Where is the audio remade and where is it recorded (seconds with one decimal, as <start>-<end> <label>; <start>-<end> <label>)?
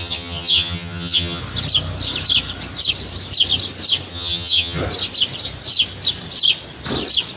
0.0-1.4 remade; 1.4-4.1 recorded; 4.1-4.8 remade; 4.8-7.4 recorded